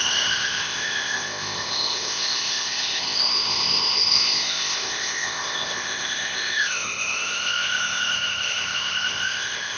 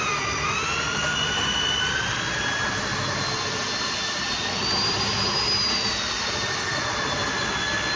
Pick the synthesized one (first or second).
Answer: first